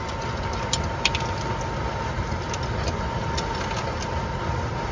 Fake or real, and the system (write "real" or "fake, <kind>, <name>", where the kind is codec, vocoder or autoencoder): real